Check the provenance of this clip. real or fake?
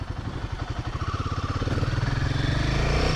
real